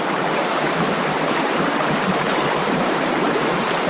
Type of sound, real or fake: fake